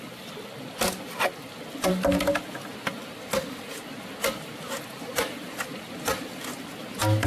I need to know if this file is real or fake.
real